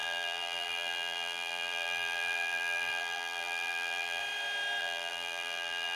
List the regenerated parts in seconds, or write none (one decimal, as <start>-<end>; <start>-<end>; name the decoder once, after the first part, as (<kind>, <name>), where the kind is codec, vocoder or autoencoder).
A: 0.0-4.2 (vocoder, BigVGAN v2); 4.8-6.0

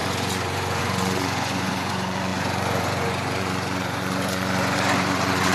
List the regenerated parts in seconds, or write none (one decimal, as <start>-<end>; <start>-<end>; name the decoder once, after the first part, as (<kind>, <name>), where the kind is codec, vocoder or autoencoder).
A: 0.0-5.5 (vocoder, Vocos)

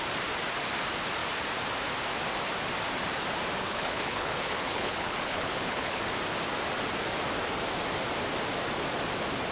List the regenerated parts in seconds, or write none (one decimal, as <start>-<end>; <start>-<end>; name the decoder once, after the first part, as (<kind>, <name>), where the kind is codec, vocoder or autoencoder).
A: 3.6-6.0 (codec, HILCodec)

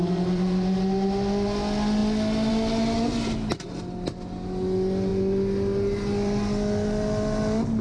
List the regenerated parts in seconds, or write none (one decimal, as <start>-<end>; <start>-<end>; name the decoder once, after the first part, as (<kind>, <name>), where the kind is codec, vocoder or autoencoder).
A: none

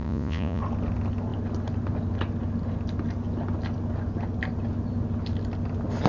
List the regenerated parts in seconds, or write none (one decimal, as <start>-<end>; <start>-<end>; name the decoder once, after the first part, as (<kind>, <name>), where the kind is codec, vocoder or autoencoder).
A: 0.0-0.6 (vocoder, Vocos)

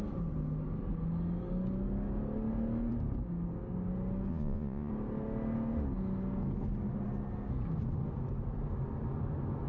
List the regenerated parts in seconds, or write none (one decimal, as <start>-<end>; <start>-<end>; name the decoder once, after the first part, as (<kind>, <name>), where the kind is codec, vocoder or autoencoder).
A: 4.3-4.9 (vocoder, Vocos)

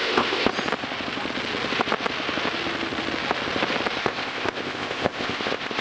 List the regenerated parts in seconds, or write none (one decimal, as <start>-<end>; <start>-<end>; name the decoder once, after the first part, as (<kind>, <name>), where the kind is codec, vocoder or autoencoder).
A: 0.0-0.5 (codec, ZipCodec); 4.0-5.8